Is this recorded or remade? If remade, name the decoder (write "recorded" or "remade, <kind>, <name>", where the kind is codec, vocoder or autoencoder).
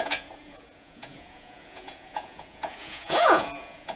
remade, vocoder, Vocos